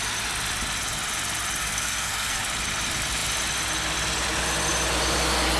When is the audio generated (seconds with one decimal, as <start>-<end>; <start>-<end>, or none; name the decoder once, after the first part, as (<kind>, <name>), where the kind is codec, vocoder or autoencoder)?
1.6-2.4 (codec, SNAC)